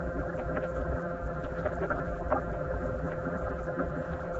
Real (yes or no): no